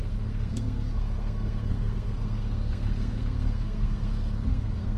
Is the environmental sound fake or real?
fake